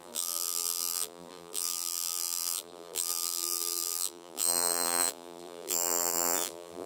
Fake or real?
fake